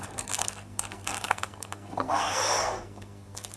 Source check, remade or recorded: remade